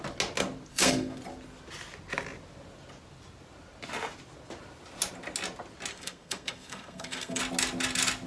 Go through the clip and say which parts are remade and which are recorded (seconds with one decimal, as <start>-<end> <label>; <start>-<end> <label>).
0.0-0.7 recorded; 0.7-1.2 remade; 1.2-5.9 recorded; 5.9-7.4 remade; 7.4-8.3 recorded